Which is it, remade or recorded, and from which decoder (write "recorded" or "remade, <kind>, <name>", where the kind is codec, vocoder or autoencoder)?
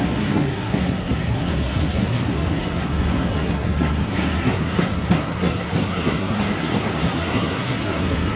remade, codec, SNAC